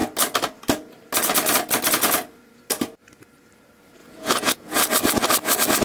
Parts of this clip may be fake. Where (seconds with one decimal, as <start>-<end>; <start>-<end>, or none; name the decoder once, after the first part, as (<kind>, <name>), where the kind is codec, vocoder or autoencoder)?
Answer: 4.0-4.8 (vocoder, Vocos)